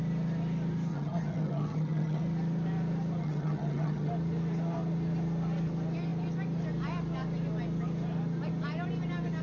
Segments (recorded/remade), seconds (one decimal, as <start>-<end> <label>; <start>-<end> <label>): 0.0-0.9 recorded; 0.9-2.2 remade; 2.2-3.2 recorded; 3.2-4.1 remade; 4.1-9.4 recorded